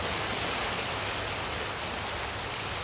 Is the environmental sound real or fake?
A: real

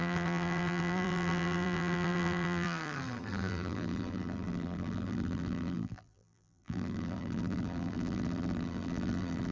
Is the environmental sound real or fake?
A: fake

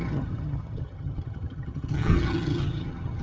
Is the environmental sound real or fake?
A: fake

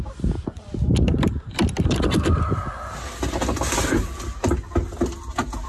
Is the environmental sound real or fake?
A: real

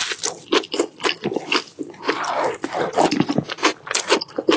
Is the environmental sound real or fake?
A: real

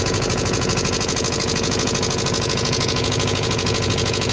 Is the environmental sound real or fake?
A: fake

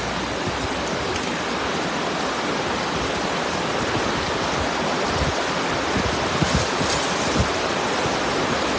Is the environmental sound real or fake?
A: real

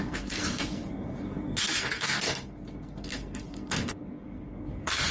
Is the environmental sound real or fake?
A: fake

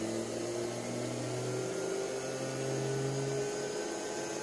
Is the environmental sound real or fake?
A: real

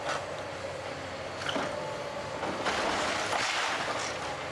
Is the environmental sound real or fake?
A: real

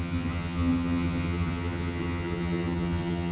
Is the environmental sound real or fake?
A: fake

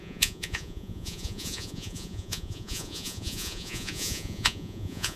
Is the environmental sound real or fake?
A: fake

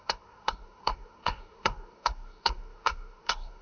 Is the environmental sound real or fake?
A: fake